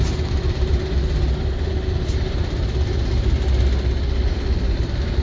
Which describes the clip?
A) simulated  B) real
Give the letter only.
B